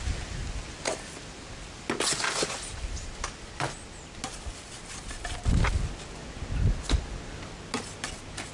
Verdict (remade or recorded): recorded